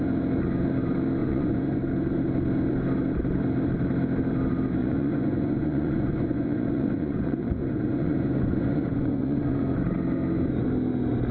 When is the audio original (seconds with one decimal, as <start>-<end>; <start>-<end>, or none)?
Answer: 0.0-1.2; 1.8-4.8; 9.6-11.3